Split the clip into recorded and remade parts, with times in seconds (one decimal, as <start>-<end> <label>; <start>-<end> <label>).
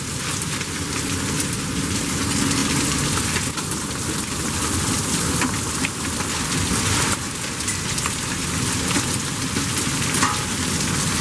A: 0.0-11.2 recorded